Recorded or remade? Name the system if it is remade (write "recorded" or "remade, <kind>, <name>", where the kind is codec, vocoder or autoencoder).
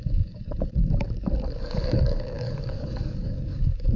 remade, codec, DAC